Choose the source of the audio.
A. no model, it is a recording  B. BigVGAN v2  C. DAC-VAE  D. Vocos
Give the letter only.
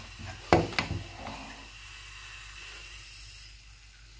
A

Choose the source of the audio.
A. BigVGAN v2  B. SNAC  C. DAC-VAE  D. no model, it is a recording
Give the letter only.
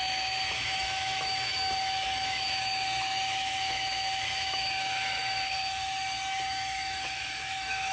C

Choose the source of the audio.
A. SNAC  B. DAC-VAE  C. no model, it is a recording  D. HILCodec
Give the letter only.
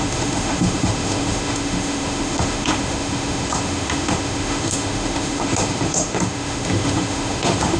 B